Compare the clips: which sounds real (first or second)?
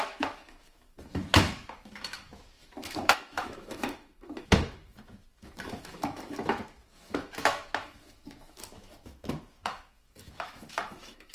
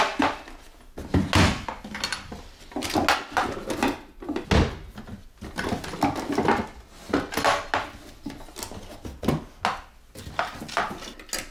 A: second